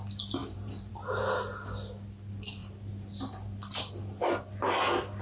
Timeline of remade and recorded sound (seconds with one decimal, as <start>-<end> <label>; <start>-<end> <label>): 0.0-0.4 recorded; 0.4-0.9 remade; 0.9-2.6 recorded; 2.6-3.8 remade; 3.8-5.2 recorded